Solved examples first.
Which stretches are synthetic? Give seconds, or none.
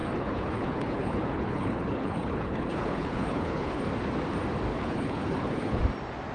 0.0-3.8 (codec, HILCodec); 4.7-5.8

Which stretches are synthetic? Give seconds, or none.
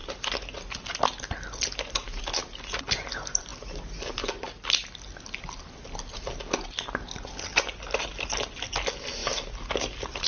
none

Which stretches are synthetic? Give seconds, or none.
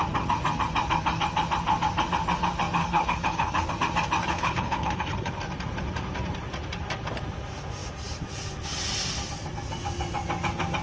2.8-3.7 (codec, HILCodec); 4.2-5.3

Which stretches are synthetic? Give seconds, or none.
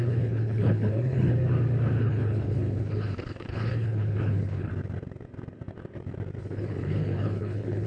0.0-1.3 (codec, HILCodec); 2.0-4.7; 6.4-7.9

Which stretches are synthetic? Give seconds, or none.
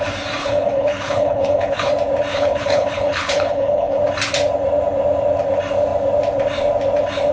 0.4-1.9 (codec, HILCodec); 2.3-4.0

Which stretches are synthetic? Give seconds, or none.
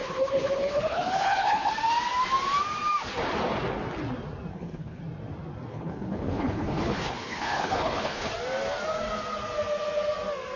0.0-1.7 (codec, HILCodec); 4.5-5.0; 5.7-8.3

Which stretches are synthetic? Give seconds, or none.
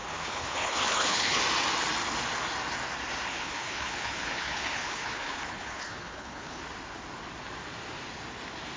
0.0-1.4 (codec, HILCodec); 3.3-6.6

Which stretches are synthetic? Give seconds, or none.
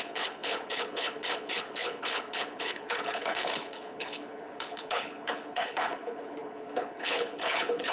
0.0-7.9 (codec, HILCodec)